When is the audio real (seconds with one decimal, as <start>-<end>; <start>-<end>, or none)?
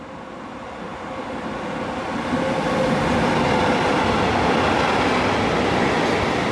0.0-6.5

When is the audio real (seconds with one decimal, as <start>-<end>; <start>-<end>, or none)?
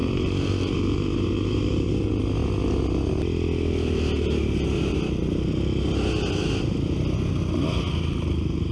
1.9-8.7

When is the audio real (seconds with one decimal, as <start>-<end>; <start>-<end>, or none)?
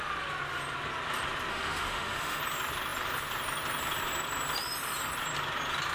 0.0-1.5; 2.4-5.9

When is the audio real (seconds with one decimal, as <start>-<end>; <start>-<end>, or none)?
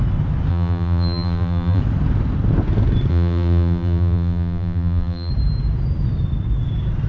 0.0-0.5; 1.8-3.1; 5.3-7.1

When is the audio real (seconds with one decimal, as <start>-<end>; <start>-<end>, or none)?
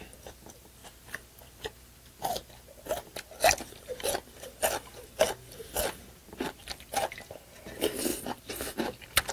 none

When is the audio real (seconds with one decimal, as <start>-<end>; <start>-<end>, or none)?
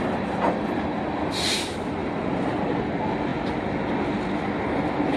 0.0-2.0; 2.7-5.2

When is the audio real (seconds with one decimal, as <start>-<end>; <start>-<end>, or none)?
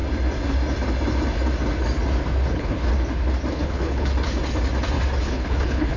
0.0-2.5; 2.9-3.5; 4.1-5.2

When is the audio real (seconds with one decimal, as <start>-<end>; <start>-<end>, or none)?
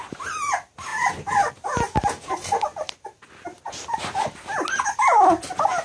0.0-5.8